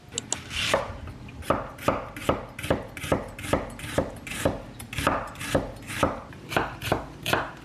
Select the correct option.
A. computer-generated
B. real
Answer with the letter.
B